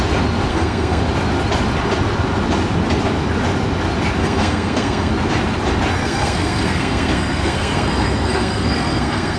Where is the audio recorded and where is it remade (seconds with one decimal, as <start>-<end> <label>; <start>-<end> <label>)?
0.0-0.5 recorded; 0.5-1.0 remade; 1.0-4.2 recorded; 4.2-5.1 remade; 5.1-6.0 recorded; 6.0-9.4 remade